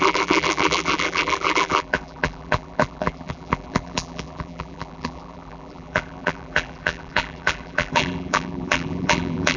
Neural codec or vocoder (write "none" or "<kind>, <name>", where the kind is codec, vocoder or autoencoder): vocoder, BigVGAN v2